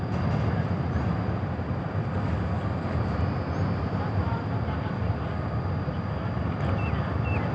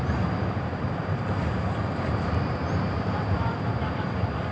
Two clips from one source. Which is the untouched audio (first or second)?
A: first